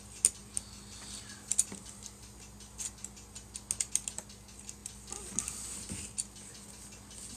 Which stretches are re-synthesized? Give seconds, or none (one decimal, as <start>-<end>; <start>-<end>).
0.4-1.9; 4.8-5.9